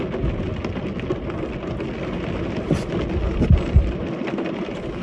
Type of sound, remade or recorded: recorded